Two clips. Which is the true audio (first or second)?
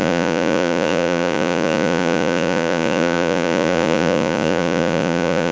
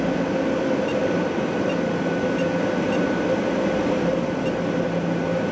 second